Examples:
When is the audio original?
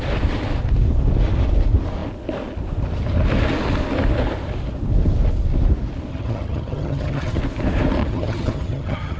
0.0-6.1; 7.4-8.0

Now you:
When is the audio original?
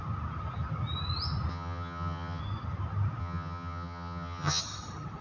0.0-1.5; 2.4-3.2; 4.6-5.2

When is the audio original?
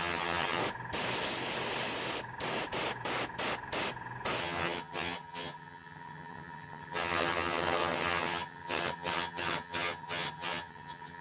0.6-4.4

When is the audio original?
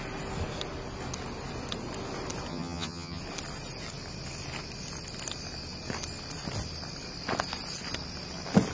0.0-2.5; 3.2-8.7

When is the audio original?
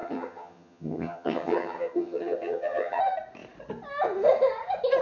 3.0-5.0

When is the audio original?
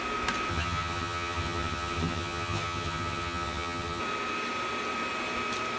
0.0-0.5; 4.0-5.8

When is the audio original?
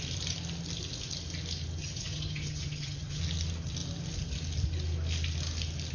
0.0-1.8; 3.2-5.9